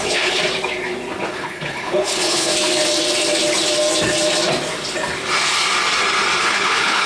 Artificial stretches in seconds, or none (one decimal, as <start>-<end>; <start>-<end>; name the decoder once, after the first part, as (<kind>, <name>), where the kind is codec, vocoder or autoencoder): 0.0-0.4 (codec, HILCodec); 1.3-2.5; 6.4-7.1